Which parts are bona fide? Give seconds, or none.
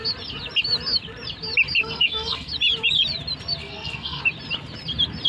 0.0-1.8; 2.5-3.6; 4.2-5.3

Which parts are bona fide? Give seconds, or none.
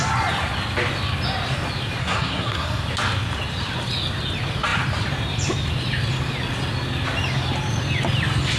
0.0-2.0; 2.8-8.6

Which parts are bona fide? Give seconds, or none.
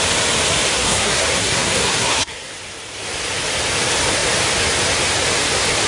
0.0-0.7; 2.5-5.9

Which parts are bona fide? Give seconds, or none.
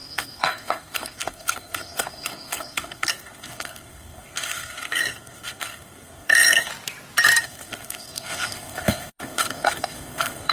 6.7-7.4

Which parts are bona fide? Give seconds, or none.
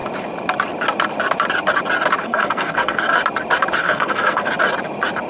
0.0-2.2; 3.1-3.8; 4.5-5.3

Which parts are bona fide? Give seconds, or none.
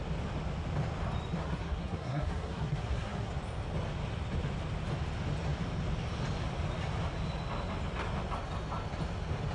0.0-1.4; 3.3-9.5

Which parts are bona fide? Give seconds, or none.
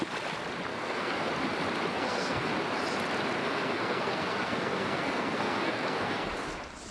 0.0-0.7; 1.3-1.9; 2.5-3.4; 6.3-6.9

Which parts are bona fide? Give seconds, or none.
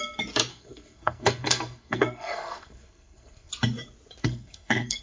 0.0-0.5; 3.5-4.2